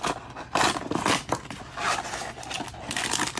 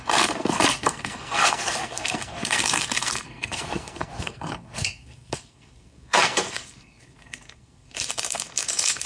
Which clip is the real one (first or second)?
first